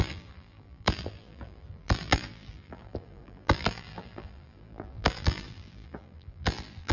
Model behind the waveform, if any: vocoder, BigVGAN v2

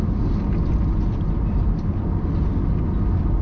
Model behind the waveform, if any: none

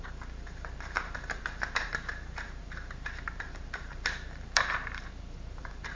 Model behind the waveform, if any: vocoder, BigVGAN v2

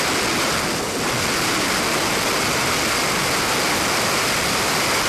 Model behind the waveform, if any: none